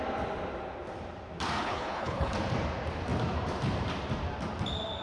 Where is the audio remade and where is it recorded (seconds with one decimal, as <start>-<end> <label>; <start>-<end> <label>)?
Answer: 0.0-1.6 recorded; 1.6-2.3 remade; 2.3-5.0 recorded